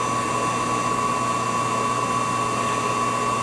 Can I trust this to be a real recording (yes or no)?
yes